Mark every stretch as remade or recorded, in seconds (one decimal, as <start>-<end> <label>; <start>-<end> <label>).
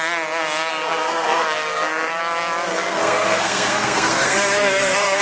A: 0.0-0.7 recorded; 0.7-2.2 remade; 2.2-2.7 recorded; 2.7-5.2 remade